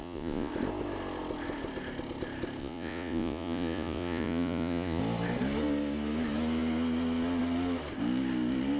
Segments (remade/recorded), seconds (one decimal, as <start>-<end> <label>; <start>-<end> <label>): 0.0-0.5 remade; 0.5-2.6 recorded; 2.6-5.0 remade; 5.0-8.8 recorded